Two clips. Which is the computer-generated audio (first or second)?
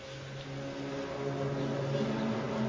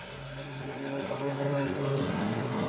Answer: second